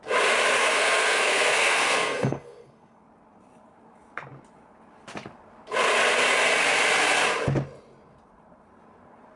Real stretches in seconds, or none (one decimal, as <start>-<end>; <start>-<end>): 0.0-0.6; 3.0-9.4